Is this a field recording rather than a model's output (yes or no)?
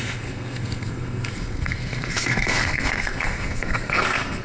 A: no